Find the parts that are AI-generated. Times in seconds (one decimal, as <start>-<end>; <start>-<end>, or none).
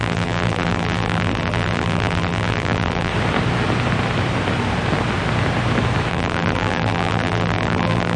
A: 0.0-3.1; 6.1-8.2